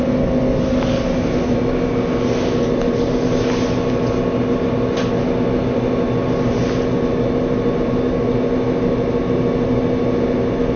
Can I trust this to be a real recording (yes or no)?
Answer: yes